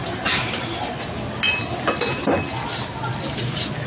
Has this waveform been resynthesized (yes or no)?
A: no